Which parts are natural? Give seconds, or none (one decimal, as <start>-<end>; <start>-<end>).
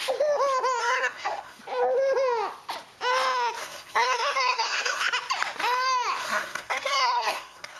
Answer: 0.0-0.8; 1.6-3.6; 5.0-6.2